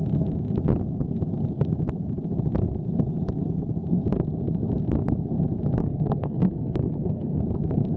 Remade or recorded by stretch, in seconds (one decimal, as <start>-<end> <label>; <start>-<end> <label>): 0.0-5.8 recorded; 5.8-7.4 remade; 7.4-8.0 recorded